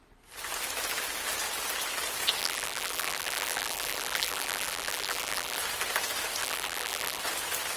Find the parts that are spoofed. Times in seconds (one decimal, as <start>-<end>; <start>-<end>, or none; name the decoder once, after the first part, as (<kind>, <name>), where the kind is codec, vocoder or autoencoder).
2.4-5.6 (vocoder, BigVGAN v2); 6.4-7.2